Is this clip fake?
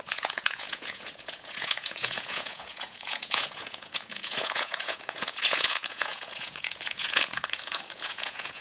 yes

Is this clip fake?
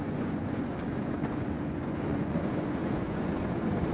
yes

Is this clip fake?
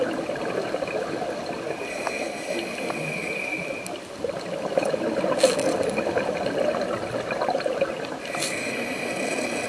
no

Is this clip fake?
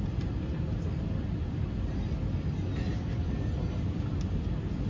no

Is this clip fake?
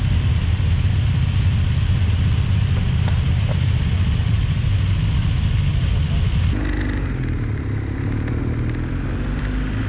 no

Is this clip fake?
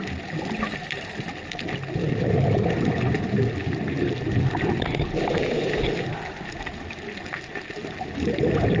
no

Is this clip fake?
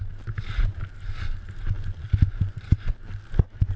no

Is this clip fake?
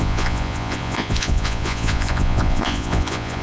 yes